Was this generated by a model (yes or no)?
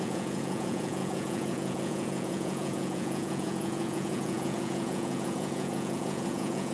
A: yes